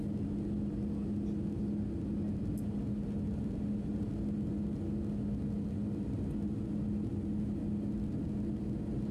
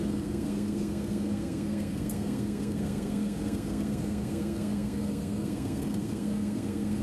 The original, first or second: first